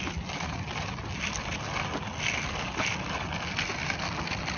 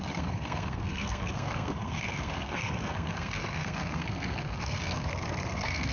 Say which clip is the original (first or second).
first